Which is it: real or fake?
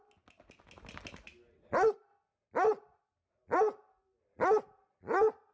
real